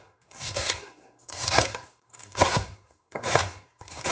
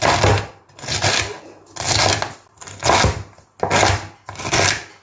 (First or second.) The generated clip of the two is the first